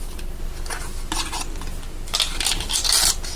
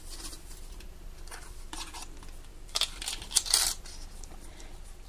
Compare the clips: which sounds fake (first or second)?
second